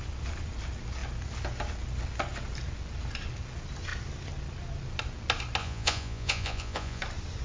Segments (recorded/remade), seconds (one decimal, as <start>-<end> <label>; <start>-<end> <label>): 0.0-5.6 recorded; 5.6-7.0 remade; 7.0-7.4 recorded